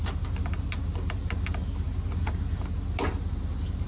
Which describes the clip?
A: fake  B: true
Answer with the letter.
B